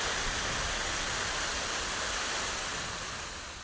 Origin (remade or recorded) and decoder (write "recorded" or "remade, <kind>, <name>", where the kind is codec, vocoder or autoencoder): recorded